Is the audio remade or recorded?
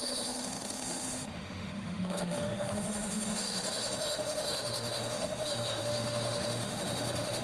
remade